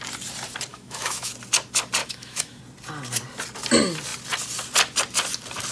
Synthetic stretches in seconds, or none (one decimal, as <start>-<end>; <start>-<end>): 0.7-1.3; 2.0-2.6